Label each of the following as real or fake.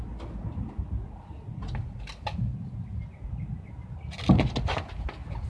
real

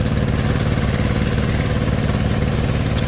real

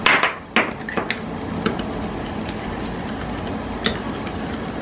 real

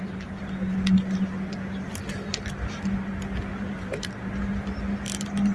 real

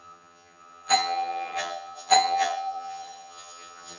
fake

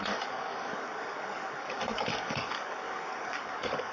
fake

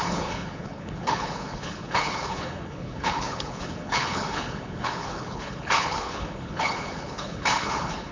fake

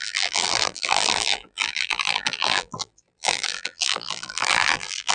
fake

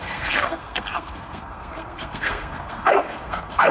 fake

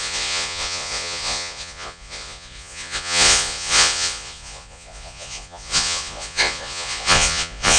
fake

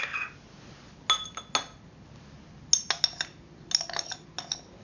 real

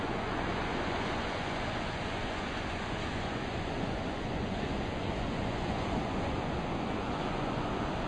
fake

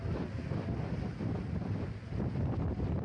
real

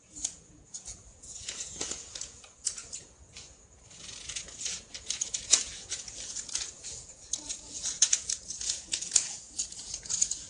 fake